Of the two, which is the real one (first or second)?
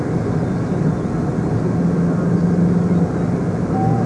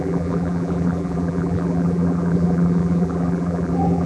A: first